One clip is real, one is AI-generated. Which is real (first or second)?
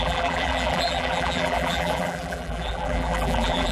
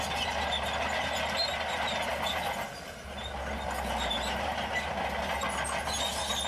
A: second